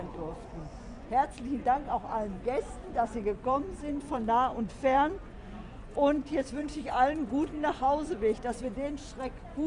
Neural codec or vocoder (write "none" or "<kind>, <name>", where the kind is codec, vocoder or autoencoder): vocoder, Vocos